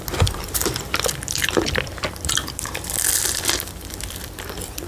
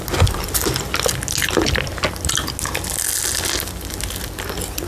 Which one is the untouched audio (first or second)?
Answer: second